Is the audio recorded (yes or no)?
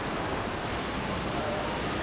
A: yes